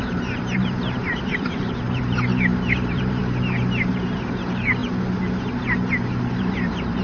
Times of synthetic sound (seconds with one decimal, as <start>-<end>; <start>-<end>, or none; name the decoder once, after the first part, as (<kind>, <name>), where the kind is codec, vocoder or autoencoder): 0.0-3.2 (vocoder, BigVGAN v2); 3.9-4.8; 6.3-7.0